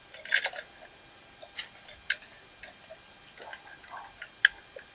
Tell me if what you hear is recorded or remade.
recorded